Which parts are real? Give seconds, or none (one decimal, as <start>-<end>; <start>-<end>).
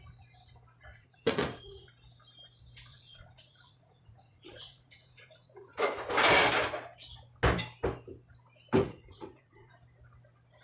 0.0-0.9; 1.9-2.9; 6.1-8.8; 9.7-10.6